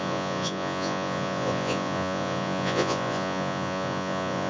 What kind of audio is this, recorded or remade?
remade